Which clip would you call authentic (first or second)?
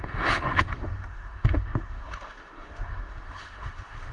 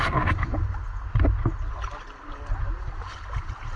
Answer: second